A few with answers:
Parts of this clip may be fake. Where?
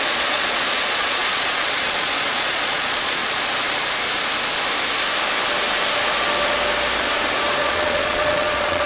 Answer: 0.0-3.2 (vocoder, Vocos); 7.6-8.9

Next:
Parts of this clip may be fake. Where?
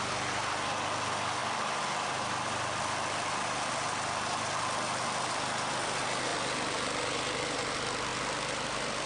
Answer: none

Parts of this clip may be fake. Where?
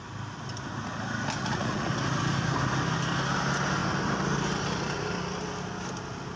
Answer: 1.4-1.9 (vocoder, Vocos)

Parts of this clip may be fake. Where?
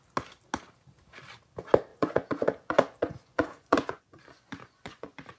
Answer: 1.9-5.4 (vocoder, Vocos)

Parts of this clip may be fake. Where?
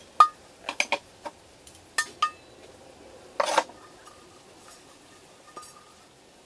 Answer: none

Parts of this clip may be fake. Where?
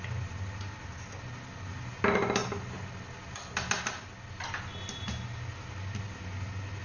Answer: none